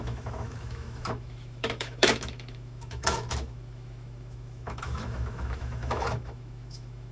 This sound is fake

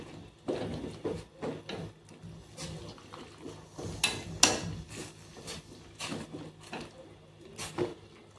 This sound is real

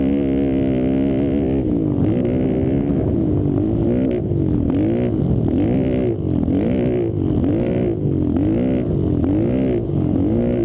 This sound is real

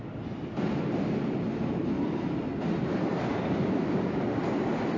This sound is real